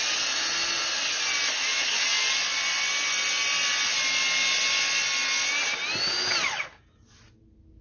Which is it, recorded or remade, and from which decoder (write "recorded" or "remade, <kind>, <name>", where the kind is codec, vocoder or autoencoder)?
recorded